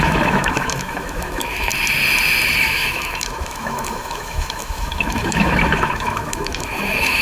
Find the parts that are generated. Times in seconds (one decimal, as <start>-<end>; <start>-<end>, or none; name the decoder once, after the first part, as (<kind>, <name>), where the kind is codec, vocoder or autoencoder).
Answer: 0.0-1.7 (autoencoder, DAC-VAE); 2.6-7.2